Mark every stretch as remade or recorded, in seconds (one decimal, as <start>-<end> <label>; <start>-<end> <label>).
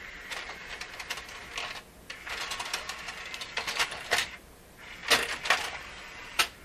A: 0.0-1.4 remade; 1.4-3.7 recorded; 3.7-5.0 remade; 5.0-5.6 recorded; 5.6-6.6 remade